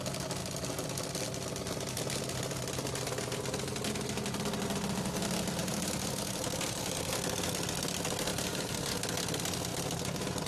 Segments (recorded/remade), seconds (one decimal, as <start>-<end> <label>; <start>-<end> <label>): 0.0-5.6 recorded; 5.6-7.1 remade; 7.1-8.3 recorded; 8.3-9.0 remade; 9.0-9.7 recorded; 9.7-10.5 remade